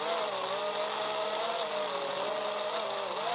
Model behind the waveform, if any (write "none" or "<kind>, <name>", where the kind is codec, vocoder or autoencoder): none